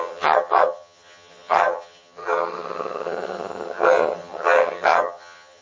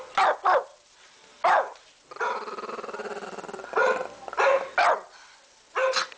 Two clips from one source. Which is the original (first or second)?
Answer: second